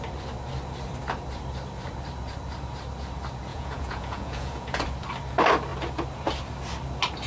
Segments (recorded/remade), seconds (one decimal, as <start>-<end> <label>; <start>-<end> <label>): 0.0-3.5 recorded; 3.5-4.8 remade; 4.8-7.3 recorded